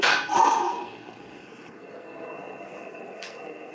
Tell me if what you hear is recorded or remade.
remade